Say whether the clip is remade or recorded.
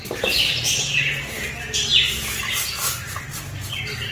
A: recorded